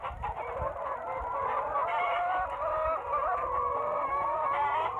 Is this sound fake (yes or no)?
yes